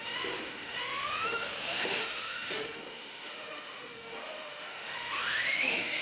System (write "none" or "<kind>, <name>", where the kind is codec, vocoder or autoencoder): autoencoder, DAC-VAE